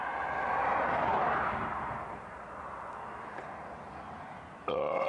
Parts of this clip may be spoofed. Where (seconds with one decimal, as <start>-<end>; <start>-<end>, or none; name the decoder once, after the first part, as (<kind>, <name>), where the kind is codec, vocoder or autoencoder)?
none